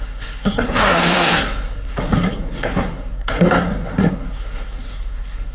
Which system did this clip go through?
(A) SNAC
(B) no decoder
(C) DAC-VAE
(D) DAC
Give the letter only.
A